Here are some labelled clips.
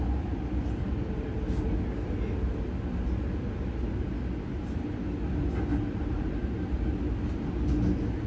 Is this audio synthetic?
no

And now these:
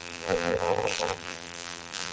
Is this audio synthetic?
yes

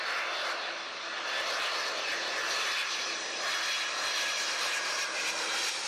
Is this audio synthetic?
no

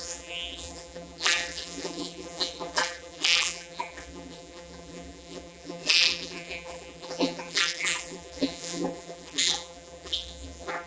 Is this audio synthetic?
yes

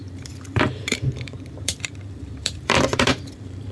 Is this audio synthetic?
yes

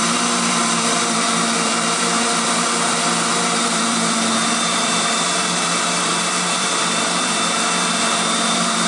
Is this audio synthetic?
yes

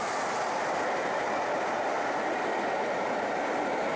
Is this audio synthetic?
no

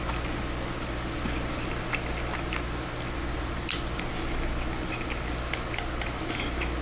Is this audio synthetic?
no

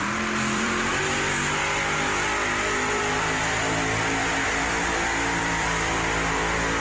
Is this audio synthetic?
yes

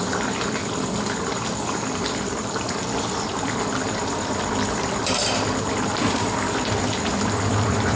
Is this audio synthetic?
yes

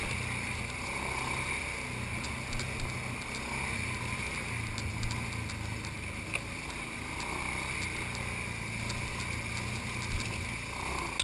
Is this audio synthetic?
no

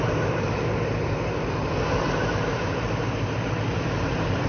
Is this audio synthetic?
yes